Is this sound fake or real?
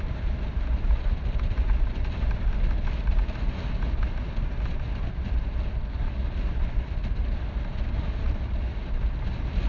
real